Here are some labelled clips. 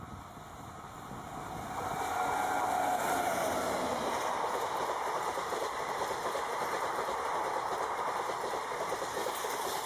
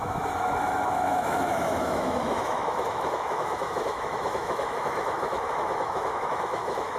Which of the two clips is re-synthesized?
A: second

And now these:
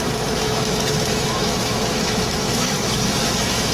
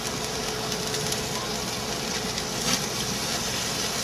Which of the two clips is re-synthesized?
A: first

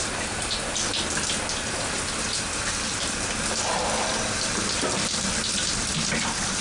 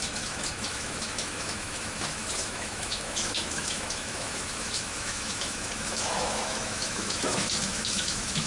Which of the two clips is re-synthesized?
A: second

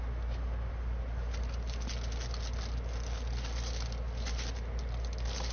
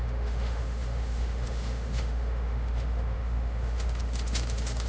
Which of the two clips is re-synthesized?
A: second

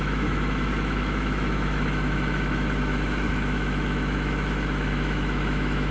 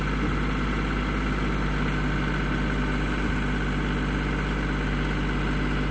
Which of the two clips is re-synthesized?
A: first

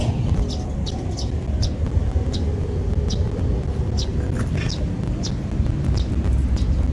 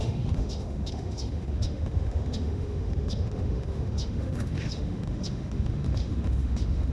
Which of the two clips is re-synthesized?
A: second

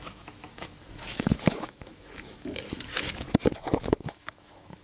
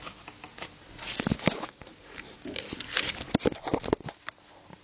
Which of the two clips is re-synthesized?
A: first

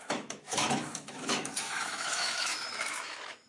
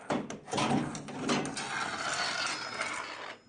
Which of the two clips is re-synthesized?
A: first